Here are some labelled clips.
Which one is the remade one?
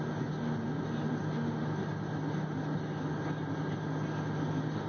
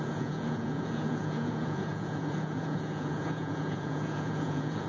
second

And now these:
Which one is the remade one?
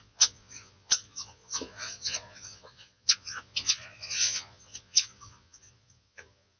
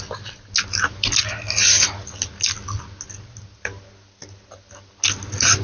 first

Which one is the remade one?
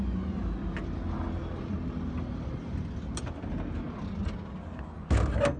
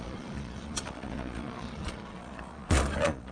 second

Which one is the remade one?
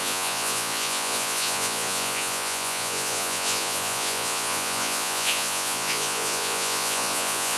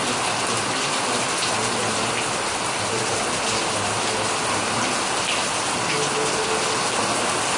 first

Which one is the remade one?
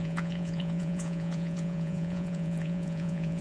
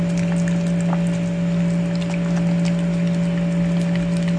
first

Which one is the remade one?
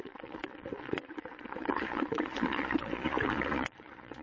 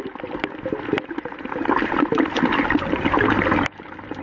first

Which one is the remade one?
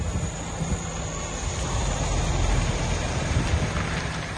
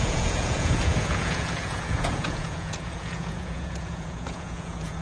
second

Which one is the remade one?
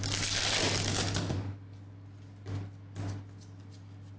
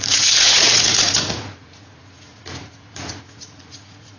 second